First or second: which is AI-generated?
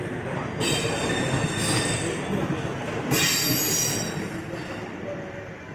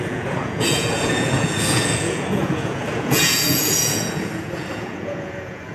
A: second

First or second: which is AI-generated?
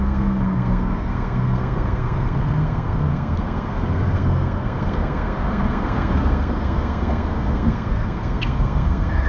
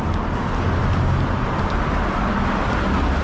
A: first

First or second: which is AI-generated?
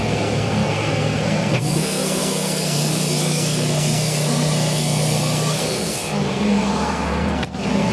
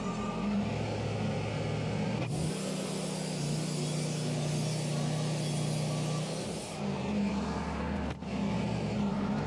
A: first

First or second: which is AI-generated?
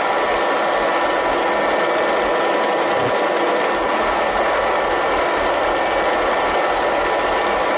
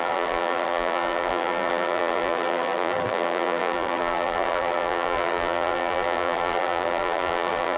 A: second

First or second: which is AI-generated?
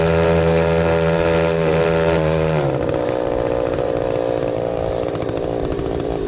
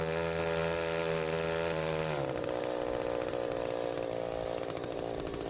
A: first